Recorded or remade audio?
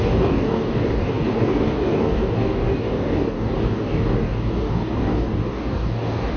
remade